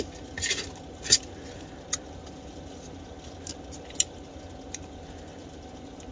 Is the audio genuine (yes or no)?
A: yes